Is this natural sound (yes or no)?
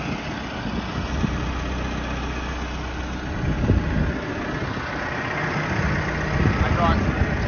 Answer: yes